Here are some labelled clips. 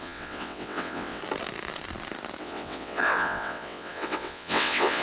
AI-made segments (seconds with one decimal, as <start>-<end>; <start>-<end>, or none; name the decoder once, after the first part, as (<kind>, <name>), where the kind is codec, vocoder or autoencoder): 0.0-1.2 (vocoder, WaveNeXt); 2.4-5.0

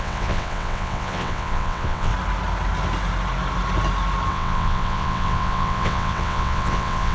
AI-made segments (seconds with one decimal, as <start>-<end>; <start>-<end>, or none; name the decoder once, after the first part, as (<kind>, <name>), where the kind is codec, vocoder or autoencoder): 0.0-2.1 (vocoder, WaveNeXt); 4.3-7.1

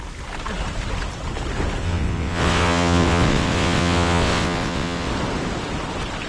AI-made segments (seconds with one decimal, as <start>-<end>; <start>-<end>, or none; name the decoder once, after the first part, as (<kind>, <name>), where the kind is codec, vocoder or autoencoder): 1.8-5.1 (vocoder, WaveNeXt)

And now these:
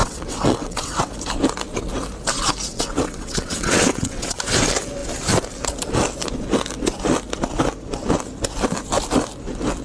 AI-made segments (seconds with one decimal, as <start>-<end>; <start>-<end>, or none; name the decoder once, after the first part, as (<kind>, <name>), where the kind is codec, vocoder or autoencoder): 0.0-1.1 (vocoder, WaveNeXt); 2.7-4.4

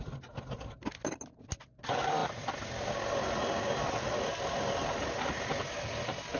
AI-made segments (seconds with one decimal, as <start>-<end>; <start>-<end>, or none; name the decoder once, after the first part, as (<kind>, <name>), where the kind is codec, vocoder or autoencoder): none